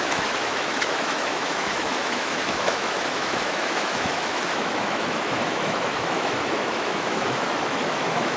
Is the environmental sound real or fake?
fake